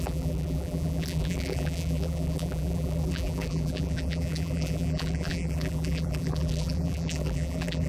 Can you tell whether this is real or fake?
fake